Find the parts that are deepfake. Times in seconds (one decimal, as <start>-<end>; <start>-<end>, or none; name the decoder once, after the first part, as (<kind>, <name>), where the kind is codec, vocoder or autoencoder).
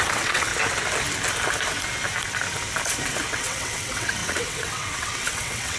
0.0-0.5 (vocoder, WaveNeXt); 3.3-5.8